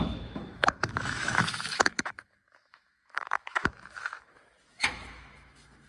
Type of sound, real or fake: fake